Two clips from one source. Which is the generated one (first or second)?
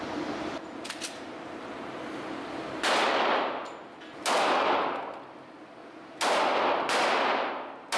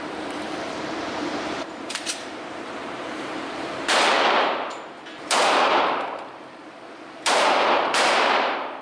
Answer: second